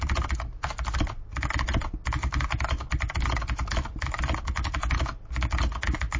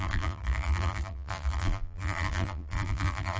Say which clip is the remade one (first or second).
second